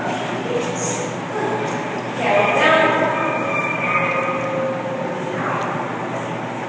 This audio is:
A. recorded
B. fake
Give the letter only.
A